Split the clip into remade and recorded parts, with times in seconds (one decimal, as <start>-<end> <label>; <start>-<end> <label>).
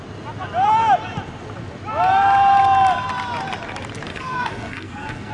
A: 0.0-4.1 recorded; 4.1-5.3 remade